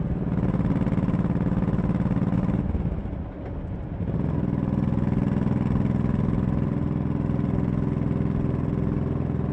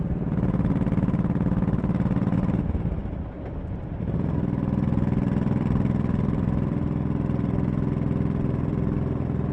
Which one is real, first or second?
first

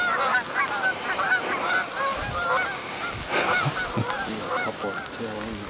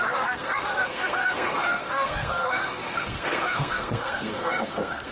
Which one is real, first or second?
first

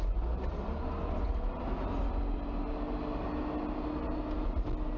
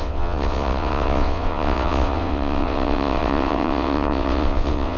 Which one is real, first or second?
first